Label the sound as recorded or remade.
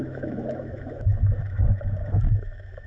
remade